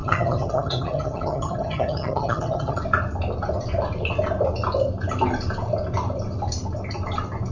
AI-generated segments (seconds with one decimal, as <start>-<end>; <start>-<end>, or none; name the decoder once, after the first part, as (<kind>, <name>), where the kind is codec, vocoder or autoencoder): 0.0-2.8 (vocoder, HiFi-GAN)